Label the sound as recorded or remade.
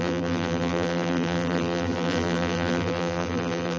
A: remade